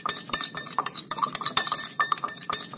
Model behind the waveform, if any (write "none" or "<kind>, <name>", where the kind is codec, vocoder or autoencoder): vocoder, BigVGAN v2